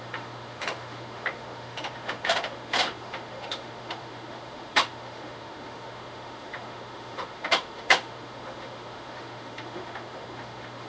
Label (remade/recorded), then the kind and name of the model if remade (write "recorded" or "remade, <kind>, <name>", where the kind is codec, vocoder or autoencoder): remade, autoencoder, DAC-VAE